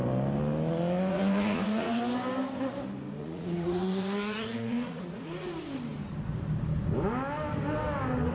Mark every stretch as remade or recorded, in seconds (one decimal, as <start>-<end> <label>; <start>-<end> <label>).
0.0-1.1 recorded; 1.1-2.0 remade; 2.0-3.2 recorded; 3.2-5.3 remade; 5.3-8.3 recorded